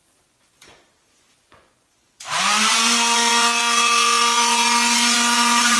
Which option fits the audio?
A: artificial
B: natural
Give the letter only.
A